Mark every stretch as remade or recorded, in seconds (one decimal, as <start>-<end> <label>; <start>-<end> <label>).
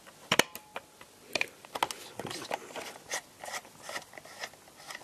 0.0-5.0 recorded